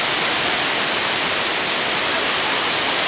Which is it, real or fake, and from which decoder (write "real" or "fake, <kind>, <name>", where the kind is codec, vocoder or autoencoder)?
real